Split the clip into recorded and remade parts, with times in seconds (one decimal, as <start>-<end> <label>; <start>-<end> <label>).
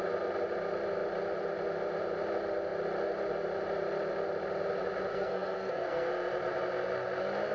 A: 0.0-5.1 recorded; 5.1-6.1 remade; 6.1-7.5 recorded